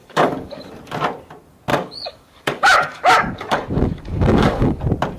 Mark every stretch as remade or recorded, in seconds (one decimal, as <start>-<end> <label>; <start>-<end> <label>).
0.0-0.7 remade; 0.7-1.7 recorded; 1.7-4.8 remade; 4.8-5.2 recorded